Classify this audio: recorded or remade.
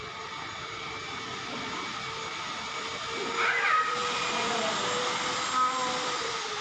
recorded